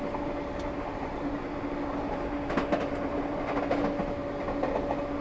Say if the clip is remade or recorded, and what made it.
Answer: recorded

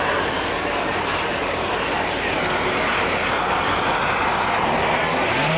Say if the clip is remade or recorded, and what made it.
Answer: recorded